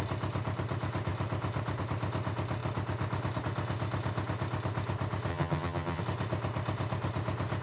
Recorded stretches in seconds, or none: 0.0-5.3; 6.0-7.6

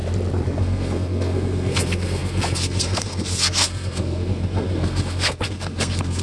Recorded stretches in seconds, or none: 0.0-0.6

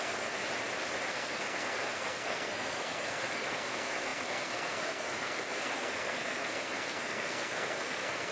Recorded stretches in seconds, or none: 0.4-1.1

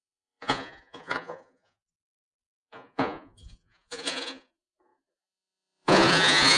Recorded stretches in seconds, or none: none

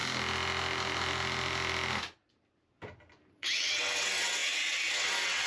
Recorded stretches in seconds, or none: 0.0-3.3

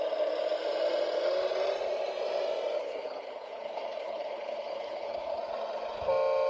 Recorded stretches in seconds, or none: 0.0-2.8; 5.4-6.5

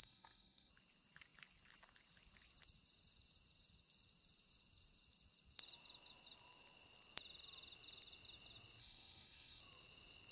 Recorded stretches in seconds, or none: 0.7-8.8; 9.6-10.3

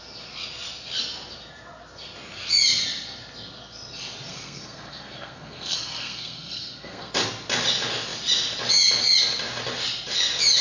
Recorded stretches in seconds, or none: 0.0-4.3; 7.1-10.6